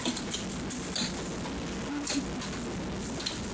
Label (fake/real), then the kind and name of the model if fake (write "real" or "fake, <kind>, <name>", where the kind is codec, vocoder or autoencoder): real